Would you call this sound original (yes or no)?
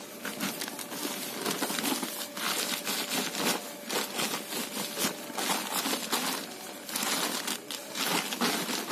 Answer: yes